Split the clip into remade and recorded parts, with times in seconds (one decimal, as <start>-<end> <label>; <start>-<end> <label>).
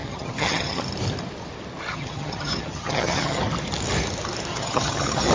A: 0.0-0.8 remade; 0.8-1.9 recorded; 1.9-3.4 remade; 3.4-4.5 recorded; 4.5-5.3 remade